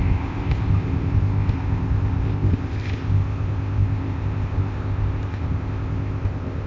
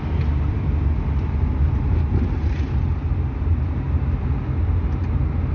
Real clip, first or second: second